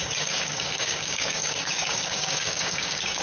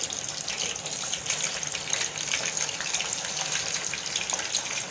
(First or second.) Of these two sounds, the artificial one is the first